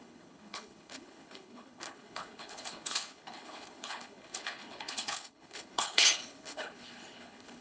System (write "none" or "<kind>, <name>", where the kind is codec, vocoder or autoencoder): codec, HILCodec